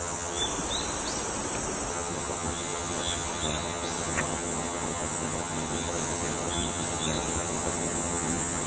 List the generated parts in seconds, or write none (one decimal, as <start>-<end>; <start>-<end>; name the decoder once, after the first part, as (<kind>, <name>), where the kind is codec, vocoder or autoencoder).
0.0-0.4 (vocoder, HiFi-GAN); 1.9-8.7